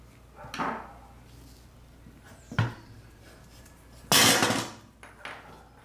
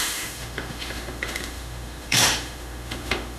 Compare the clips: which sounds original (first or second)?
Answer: first